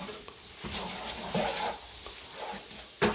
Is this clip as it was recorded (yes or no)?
yes